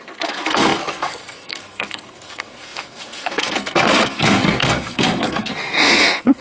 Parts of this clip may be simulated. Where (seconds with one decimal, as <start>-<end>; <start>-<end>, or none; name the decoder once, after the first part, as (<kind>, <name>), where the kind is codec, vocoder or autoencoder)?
0.0-6.4 (codec, SNAC)